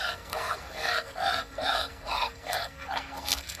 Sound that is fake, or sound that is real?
fake